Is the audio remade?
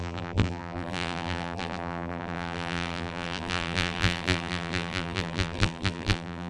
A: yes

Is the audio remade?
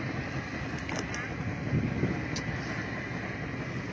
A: no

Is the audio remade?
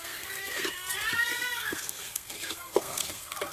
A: yes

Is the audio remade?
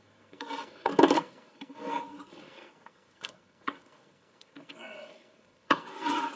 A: yes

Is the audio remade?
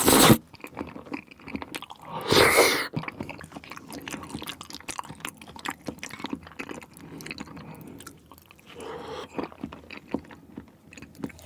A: no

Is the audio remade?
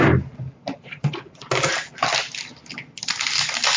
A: no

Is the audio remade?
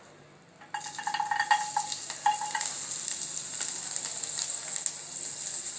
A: no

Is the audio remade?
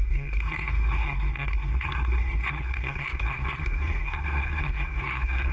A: yes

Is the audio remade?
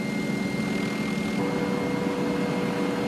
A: no